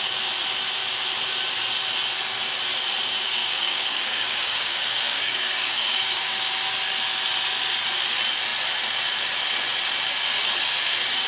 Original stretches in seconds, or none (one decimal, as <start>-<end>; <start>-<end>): 0.0-3.4; 6.5-11.3